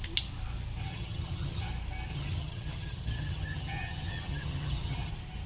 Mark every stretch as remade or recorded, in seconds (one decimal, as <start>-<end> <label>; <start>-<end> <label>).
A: 0.0-0.8 recorded; 0.8-1.7 remade; 1.7-2.1 recorded; 2.1-5.1 remade; 5.1-5.5 recorded